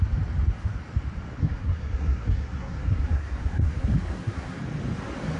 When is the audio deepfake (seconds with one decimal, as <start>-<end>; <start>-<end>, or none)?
1.4-4.6